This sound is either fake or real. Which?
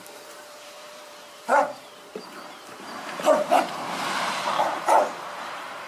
fake